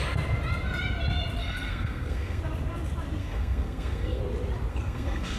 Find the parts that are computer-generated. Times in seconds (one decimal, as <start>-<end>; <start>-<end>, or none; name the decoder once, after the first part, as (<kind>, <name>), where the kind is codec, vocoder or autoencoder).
1.4-2.4 (codec, SNAC); 3.2-4.2; 4.7-5.4